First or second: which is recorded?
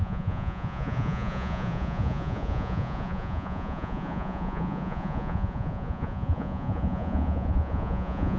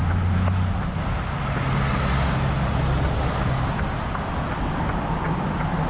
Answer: second